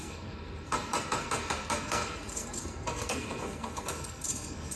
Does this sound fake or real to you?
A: fake